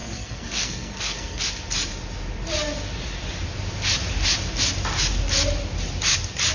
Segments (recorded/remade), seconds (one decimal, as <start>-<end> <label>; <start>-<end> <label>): 0.0-1.4 remade; 1.4-6.5 recorded